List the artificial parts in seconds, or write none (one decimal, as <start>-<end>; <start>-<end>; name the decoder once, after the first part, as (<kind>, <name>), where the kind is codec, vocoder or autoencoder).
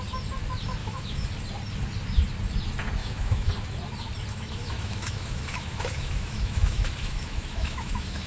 0.8-1.3 (autoencoder, DAC-VAE); 3.0-3.5; 4.3-8.3